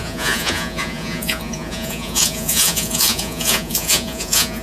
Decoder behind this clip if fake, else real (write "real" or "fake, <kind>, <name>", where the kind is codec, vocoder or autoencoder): fake, vocoder, Vocos